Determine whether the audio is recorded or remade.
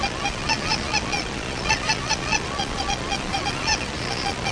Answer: remade